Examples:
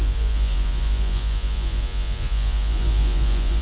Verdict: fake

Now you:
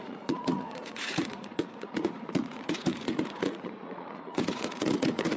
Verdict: fake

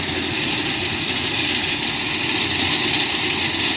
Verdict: real